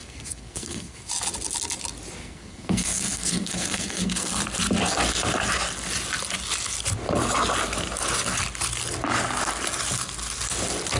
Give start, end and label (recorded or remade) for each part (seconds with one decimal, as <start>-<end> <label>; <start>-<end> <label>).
0.0-1.1 remade; 1.1-2.2 recorded; 2.2-4.4 remade; 4.4-11.0 recorded